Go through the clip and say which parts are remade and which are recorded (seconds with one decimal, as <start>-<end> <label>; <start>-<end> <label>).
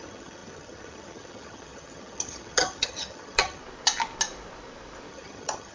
0.0-3.6 remade; 3.6-5.1 recorded; 5.1-5.7 remade